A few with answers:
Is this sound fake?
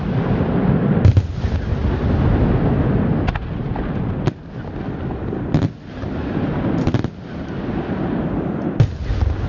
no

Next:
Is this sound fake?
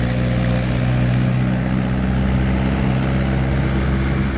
no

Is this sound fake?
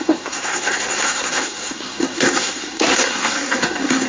yes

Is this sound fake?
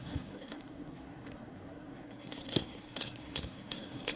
yes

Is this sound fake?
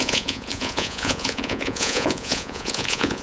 yes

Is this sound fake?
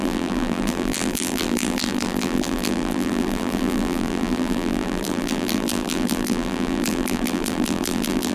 yes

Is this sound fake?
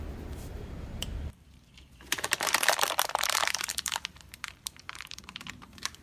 yes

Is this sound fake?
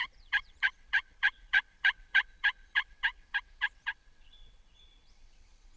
yes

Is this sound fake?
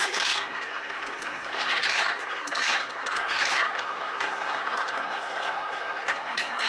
yes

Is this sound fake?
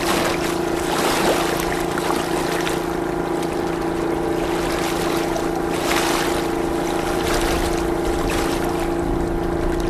no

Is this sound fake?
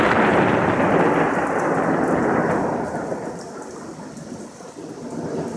no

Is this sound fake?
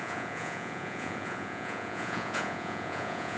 yes